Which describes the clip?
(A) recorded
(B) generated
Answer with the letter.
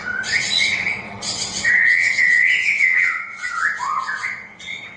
B